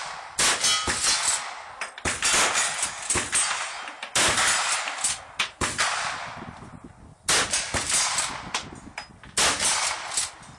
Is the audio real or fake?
real